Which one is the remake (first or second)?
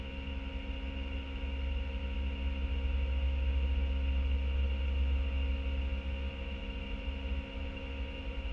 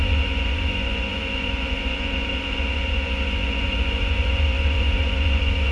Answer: second